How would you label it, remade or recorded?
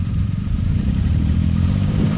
remade